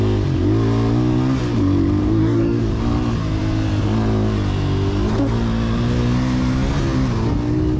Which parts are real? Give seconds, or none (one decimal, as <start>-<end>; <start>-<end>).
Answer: 0.0-2.0; 2.7-7.8